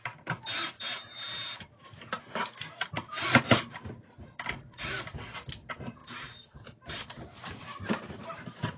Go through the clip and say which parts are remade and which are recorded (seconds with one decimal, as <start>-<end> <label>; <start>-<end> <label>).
0.0-6.0 recorded; 6.0-8.4 remade; 8.4-8.8 recorded